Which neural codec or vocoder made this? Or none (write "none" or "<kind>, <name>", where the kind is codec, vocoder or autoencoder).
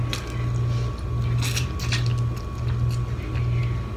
none